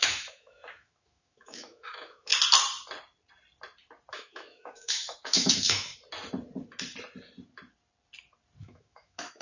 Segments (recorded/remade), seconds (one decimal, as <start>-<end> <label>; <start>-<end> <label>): 0.0-2.3 remade; 2.3-4.1 recorded; 4.1-5.9 remade; 5.9-8.6 recorded; 8.6-9.4 remade